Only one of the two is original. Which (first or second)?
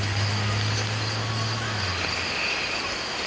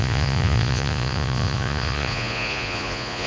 first